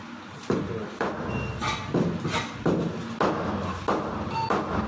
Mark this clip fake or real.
real